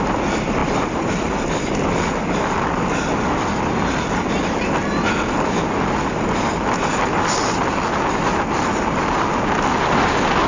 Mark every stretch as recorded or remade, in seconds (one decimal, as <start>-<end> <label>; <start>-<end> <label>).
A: 0.0-10.5 recorded